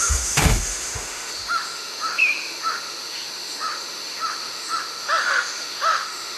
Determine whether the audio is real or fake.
fake